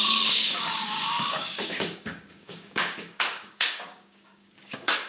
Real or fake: fake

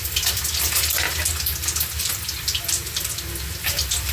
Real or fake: fake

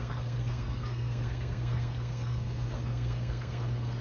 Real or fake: fake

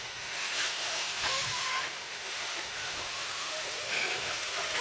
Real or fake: fake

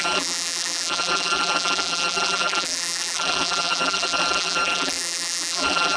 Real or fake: fake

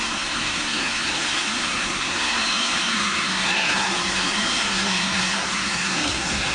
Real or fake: fake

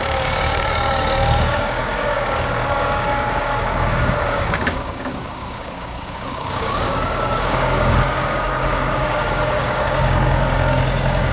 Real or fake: fake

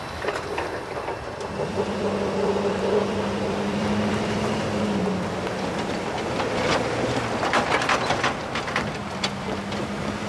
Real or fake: fake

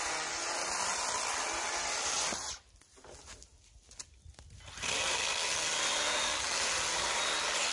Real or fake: real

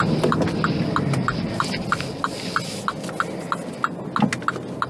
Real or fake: real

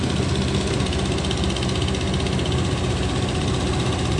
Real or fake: real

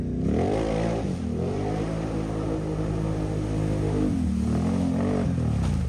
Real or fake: real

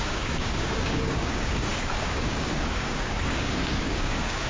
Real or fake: fake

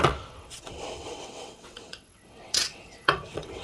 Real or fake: fake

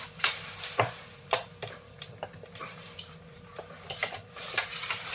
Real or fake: fake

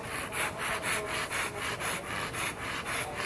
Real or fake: real